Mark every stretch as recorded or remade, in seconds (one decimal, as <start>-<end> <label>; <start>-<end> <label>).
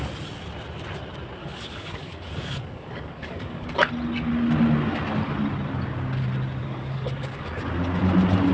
0.0-1.4 recorded; 1.4-3.9 remade; 3.9-6.6 recorded; 6.6-7.6 remade; 7.6-8.5 recorded